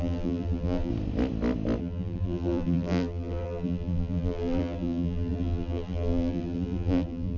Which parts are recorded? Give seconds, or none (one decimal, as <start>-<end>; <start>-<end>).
0.9-1.8